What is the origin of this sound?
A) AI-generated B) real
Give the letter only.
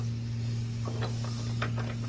B